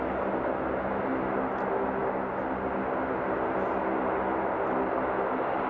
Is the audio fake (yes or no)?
no